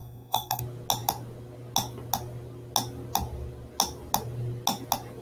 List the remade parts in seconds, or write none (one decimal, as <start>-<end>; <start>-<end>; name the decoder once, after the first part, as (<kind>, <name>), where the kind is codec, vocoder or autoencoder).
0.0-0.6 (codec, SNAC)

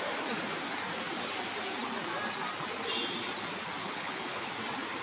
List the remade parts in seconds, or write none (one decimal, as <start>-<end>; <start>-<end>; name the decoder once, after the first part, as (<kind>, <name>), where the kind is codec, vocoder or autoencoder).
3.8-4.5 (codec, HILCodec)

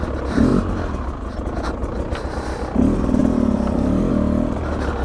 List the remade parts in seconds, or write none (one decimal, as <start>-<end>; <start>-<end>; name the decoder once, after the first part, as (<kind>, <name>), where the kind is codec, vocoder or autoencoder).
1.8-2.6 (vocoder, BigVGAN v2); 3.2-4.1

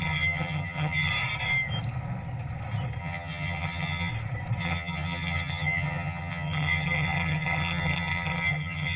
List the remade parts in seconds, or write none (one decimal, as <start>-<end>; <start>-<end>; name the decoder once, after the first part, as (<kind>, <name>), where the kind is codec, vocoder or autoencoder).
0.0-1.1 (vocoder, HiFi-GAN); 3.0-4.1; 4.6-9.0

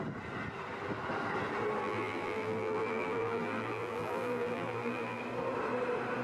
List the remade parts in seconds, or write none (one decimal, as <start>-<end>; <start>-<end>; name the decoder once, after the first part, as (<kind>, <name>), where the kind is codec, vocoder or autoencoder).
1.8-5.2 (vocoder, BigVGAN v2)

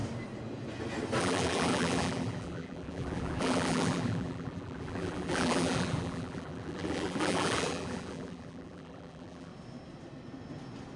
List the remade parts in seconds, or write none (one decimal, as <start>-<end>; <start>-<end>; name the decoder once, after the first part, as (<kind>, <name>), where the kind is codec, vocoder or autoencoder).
1.2-9.5 (vocoder, BigVGAN v2)

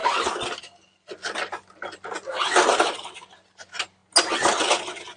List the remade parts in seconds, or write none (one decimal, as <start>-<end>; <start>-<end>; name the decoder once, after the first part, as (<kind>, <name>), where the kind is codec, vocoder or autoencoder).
none

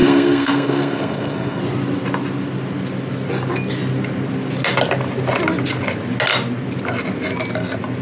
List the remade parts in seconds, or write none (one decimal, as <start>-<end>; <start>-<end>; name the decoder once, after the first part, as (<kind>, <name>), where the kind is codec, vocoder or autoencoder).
0.0-1.6 (codec, SNAC)